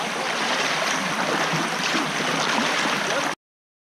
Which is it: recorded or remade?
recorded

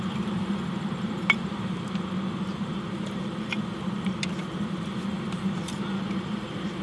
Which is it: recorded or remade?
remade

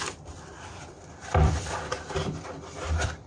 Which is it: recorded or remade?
remade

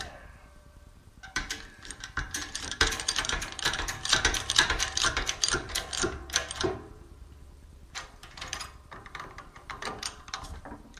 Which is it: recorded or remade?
remade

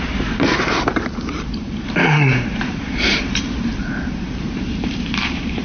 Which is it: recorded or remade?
remade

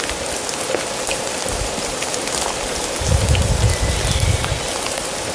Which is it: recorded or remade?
recorded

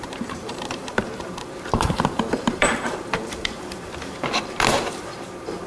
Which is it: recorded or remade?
remade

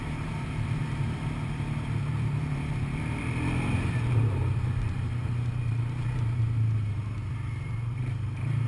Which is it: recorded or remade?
remade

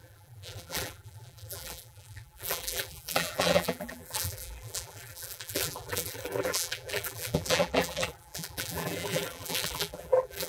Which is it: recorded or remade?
remade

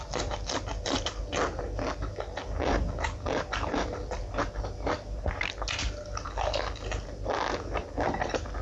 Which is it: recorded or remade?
recorded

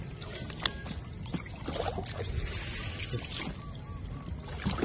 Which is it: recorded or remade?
recorded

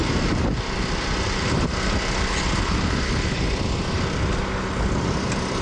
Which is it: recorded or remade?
recorded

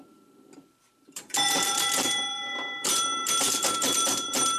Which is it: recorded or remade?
remade